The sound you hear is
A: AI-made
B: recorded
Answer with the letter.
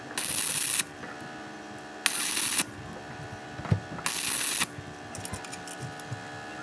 B